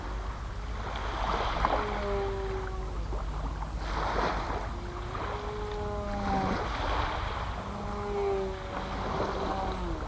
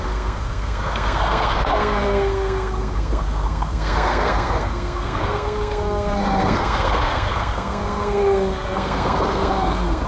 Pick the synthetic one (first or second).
second